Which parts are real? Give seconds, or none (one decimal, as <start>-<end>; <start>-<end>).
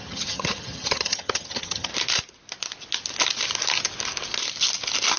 1.9-5.2